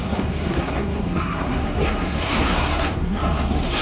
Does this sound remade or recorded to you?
remade